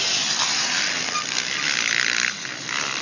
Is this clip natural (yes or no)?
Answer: yes